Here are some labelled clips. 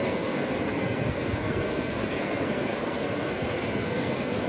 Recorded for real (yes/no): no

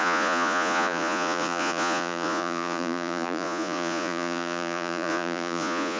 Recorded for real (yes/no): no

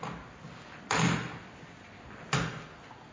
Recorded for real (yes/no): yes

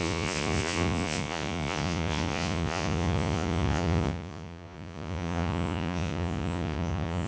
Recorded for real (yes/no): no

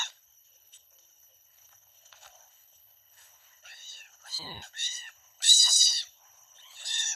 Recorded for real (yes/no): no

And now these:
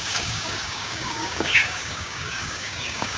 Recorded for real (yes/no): no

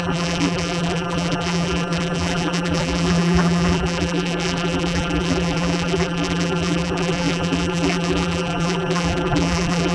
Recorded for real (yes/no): no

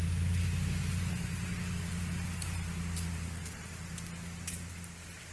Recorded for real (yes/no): yes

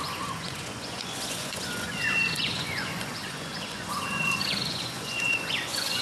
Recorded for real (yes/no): no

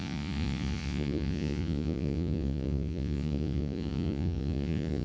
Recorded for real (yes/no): no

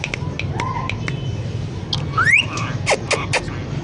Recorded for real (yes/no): yes